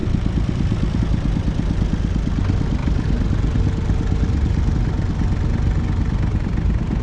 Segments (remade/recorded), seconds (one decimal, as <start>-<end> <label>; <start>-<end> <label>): 0.0-1.0 remade; 1.0-2.8 recorded; 2.8-4.7 remade; 4.7-7.0 recorded